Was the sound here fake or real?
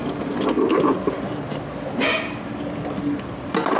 real